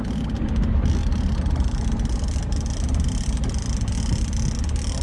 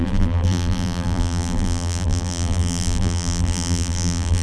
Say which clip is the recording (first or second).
first